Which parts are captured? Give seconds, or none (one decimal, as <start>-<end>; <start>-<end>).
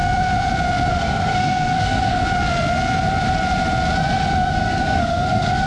0.0-0.9; 2.1-4.5